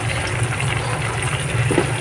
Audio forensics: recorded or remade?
recorded